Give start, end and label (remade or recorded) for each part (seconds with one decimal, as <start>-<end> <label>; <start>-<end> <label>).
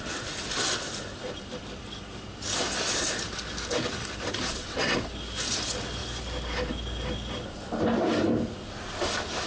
0.0-4.5 recorded; 4.5-5.1 remade; 5.1-9.5 recorded